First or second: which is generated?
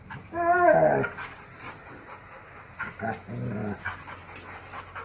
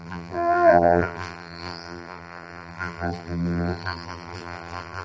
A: second